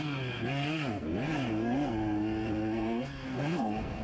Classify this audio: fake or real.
fake